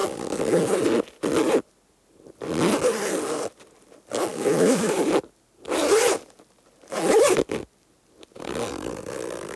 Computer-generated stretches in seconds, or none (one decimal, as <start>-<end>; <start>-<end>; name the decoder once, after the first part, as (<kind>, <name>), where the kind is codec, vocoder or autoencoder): 4.3-5.0 (autoencoder, DAC-VAE)